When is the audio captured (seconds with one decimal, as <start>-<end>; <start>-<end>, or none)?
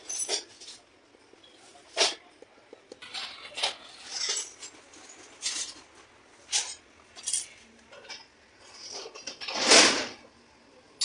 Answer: 0.0-11.0